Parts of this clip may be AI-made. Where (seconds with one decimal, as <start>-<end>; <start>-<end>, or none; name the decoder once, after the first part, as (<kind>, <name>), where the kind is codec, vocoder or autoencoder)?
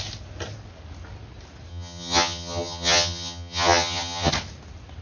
1.7-4.3 (vocoder, HiFi-GAN)